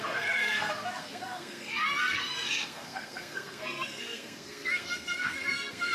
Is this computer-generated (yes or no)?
yes